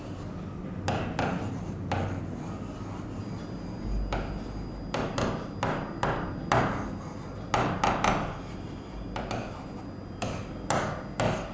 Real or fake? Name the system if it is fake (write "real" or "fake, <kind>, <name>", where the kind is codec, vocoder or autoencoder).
real